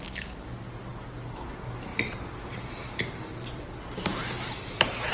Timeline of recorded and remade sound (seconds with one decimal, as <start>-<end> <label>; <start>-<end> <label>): 0.0-0.9 recorded; 0.9-1.5 remade; 1.5-1.9 recorded; 1.9-2.6 remade; 2.6-4.1 recorded; 4.1-5.1 remade